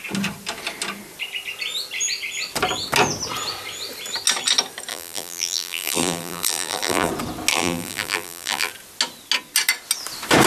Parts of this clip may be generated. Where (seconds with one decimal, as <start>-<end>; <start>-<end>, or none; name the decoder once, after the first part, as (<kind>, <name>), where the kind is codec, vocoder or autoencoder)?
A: 4.9-7.1 (vocoder, BigVGAN v2); 7.5-8.7